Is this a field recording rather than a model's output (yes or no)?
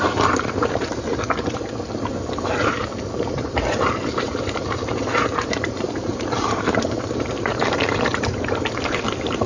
no